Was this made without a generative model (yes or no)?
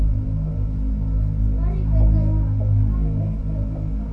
yes